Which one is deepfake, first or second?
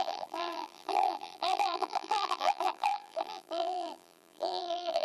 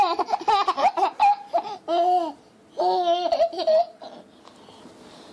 first